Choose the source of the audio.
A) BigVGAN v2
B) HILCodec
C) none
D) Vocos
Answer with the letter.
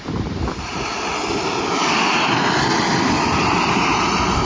C